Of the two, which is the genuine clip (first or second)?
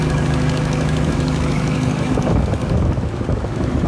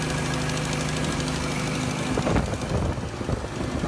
second